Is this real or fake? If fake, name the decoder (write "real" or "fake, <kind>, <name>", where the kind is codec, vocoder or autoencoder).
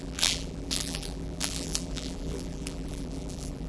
fake, vocoder, BigVGAN v2